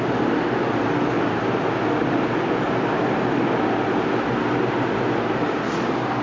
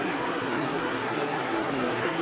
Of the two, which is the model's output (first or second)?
second